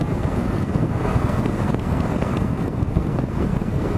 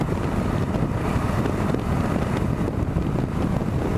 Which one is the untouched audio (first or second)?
second